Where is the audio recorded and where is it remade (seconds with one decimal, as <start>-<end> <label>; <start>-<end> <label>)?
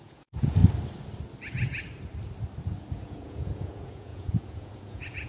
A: 0.0-0.6 remade; 0.6-2.9 recorded; 2.9-5.3 remade